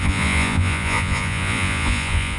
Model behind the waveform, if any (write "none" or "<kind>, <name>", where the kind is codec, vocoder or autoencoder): vocoder, Vocos